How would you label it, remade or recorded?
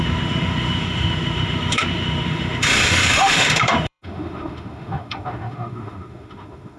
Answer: remade